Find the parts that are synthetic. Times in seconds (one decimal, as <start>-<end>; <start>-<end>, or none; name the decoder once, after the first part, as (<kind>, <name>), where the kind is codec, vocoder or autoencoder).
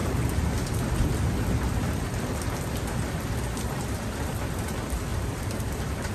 5.1-6.1 (vocoder, BigVGAN v2)